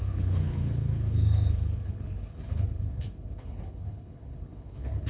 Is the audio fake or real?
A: fake